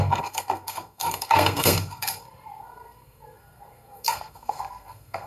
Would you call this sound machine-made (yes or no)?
yes